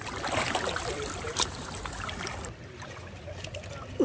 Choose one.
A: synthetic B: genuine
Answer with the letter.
A